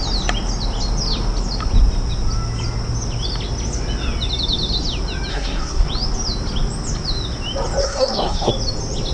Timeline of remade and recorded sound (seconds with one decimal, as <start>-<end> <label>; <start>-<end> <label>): 0.0-5.3 recorded; 5.3-5.9 remade; 5.9-7.8 recorded; 7.8-8.5 remade; 8.5-9.1 recorded